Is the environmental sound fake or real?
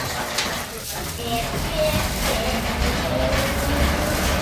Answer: real